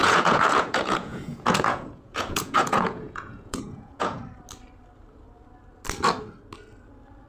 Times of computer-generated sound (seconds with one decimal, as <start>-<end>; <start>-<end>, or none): 0.0-4.2